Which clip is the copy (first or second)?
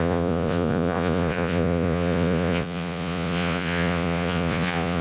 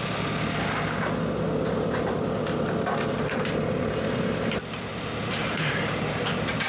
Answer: first